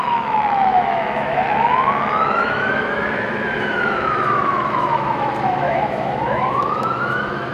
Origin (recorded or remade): remade